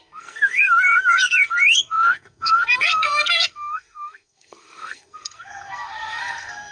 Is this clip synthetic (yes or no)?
yes